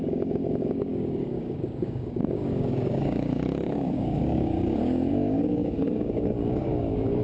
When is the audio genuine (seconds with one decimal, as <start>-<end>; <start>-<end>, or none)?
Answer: none